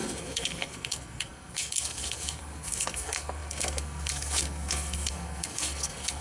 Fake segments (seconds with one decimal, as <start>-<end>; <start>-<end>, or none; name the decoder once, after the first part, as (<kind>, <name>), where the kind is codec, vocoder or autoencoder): 0.0-6.2 (codec, SNAC)